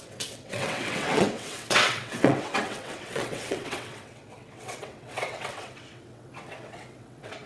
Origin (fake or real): fake